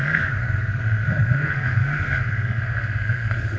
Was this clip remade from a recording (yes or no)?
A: yes